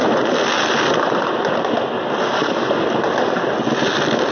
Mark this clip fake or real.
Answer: real